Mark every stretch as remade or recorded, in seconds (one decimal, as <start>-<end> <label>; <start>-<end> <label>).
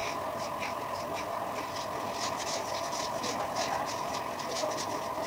0.0-5.3 recorded